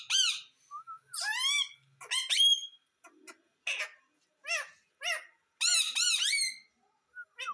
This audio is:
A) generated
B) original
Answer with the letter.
B